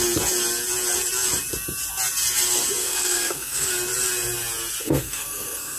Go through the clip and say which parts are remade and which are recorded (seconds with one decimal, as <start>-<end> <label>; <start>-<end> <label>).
0.0-2.8 recorded; 2.8-3.7 remade; 3.7-4.8 recorded; 4.8-5.8 remade